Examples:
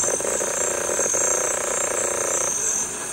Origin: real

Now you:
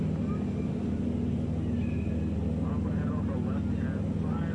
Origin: real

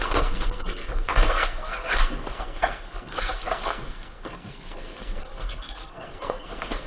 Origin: fake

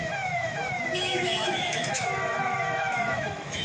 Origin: fake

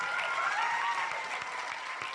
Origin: real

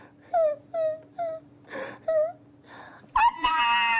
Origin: real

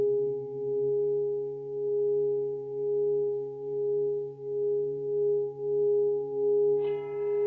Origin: real